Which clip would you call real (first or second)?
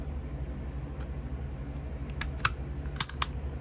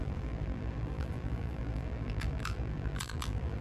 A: first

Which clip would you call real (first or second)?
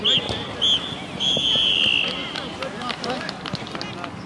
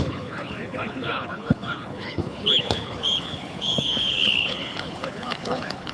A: first